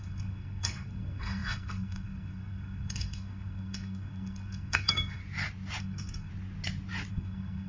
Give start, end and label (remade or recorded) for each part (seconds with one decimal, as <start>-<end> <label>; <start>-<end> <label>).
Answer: 0.0-5.2 remade; 5.2-5.8 recorded; 5.8-6.3 remade; 6.3-7.1 recorded; 7.1-7.7 remade